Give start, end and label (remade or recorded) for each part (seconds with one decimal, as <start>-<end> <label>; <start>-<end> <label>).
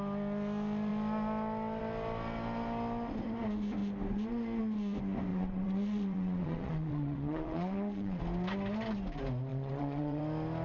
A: 0.0-5.3 recorded; 5.3-8.2 remade; 8.2-9.5 recorded; 9.5-10.2 remade; 10.2-10.6 recorded